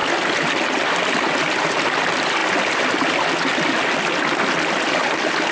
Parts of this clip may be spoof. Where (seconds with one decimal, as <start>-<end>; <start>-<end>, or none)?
none